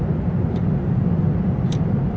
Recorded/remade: remade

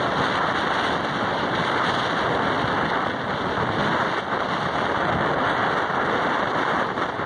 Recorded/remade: recorded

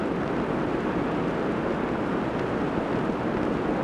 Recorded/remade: recorded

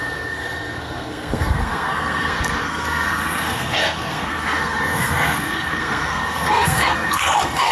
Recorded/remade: remade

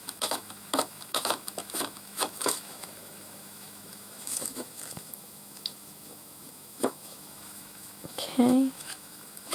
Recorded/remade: remade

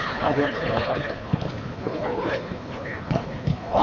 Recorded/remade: remade